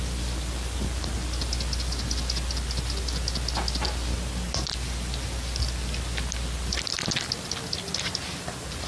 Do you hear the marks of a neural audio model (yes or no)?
no